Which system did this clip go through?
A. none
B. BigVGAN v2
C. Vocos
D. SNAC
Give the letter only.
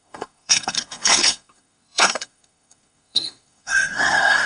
D